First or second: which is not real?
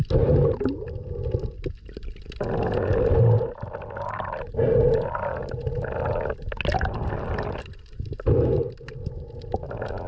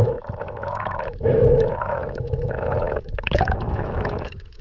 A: second